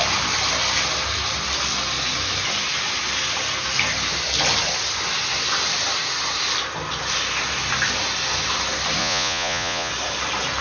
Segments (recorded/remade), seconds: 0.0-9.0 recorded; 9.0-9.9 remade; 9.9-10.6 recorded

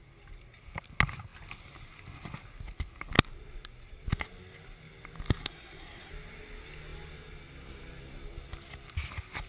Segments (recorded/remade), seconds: 0.0-5.4 recorded; 5.4-6.1 remade; 6.1-9.5 recorded